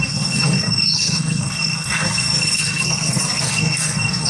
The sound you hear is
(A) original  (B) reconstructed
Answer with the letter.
B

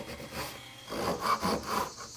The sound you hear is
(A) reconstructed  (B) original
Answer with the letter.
B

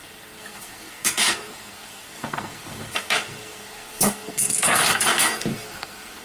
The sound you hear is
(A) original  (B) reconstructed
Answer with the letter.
B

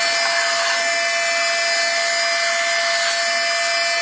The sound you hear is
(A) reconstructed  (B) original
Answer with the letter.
B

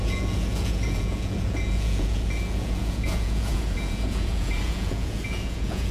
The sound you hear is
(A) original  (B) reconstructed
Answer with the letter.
B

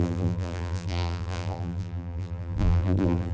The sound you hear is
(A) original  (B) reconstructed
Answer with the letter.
B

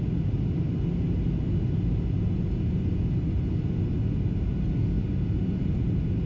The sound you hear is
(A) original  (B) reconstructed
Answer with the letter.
A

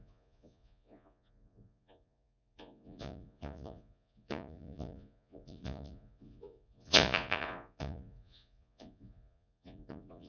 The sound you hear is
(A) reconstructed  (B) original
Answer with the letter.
A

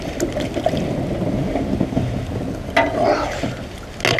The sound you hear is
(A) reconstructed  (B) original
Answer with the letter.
B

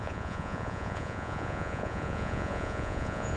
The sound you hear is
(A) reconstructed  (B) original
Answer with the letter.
A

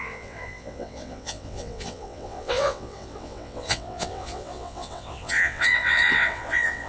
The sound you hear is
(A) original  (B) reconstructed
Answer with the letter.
B